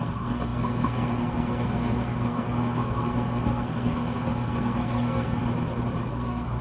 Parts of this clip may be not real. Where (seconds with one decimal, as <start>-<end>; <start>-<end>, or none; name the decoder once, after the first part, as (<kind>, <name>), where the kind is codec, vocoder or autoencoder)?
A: 0.0-5.4 (codec, SNAC); 6.1-6.6